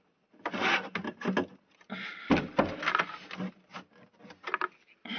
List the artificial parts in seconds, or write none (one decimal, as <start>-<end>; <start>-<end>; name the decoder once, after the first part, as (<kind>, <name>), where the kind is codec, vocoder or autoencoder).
none